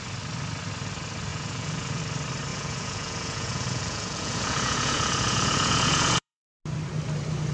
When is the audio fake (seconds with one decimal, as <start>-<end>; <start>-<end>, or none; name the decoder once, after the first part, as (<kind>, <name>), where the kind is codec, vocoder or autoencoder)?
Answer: 1.3-2.0 (vocoder, Vocos); 2.5-6.6